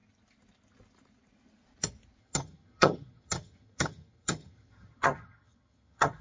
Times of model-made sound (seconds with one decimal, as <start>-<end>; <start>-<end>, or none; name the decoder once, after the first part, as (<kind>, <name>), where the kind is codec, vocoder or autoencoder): 2.2-6.2 (vocoder, HiFi-GAN)